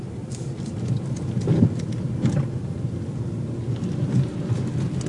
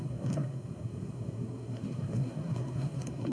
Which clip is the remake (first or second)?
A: second